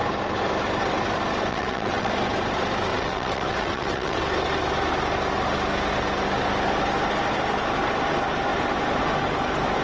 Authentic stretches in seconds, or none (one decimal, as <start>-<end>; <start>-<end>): 0.0-1.5; 2.1-2.9; 4.2-9.8